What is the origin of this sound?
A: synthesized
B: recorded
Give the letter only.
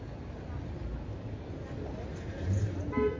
B